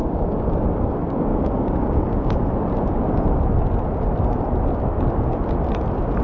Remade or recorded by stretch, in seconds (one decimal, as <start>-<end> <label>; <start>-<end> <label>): 0.0-0.5 remade; 0.5-1.3 recorded; 1.3-2.5 remade; 2.5-6.2 recorded